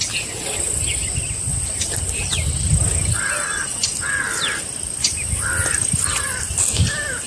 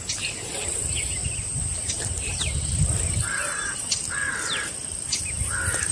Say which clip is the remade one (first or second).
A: second